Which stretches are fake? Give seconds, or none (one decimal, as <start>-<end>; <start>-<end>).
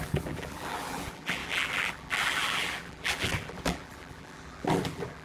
0.0-5.2